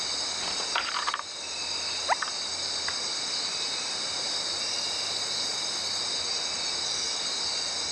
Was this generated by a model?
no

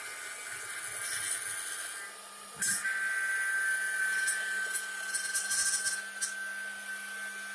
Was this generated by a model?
no